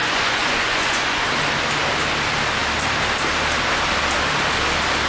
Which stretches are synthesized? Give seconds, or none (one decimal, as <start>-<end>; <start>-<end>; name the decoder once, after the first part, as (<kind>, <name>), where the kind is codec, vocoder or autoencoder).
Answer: 0.0-1.2 (vocoder, Vocos)